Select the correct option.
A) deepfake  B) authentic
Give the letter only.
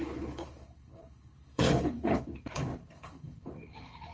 A